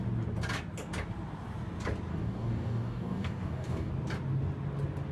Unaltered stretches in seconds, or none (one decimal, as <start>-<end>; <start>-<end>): 0.0-2.1; 3.9-5.1